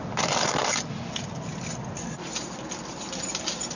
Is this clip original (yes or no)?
yes